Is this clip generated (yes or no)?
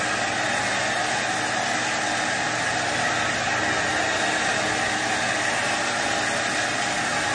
no